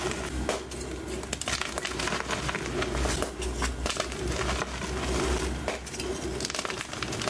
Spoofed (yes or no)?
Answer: no